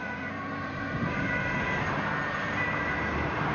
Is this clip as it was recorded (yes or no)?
no